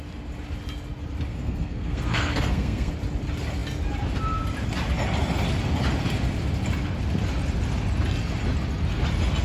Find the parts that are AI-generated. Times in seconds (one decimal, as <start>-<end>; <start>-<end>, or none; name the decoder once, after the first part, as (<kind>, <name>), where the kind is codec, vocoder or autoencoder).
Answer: 1.3-2.9 (codec, SNAC)